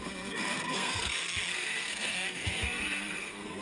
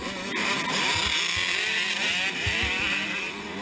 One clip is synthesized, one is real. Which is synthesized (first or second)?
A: first